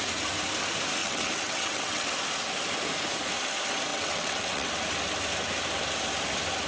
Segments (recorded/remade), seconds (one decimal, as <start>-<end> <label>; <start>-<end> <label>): 0.0-1.0 recorded; 1.0-2.1 remade; 2.1-3.9 recorded; 3.9-4.7 remade; 4.7-6.7 recorded